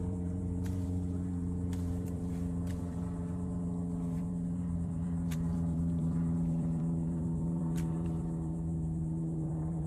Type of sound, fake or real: fake